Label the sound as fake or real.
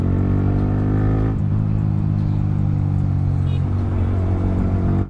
real